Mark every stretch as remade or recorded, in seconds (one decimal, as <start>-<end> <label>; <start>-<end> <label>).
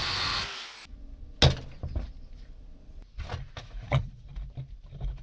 0.0-3.6 recorded; 3.6-4.3 remade; 4.3-5.2 recorded